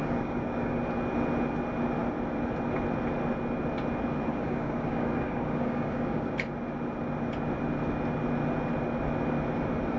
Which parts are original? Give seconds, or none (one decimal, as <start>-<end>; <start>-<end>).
0.8-4.3; 6.3-10.0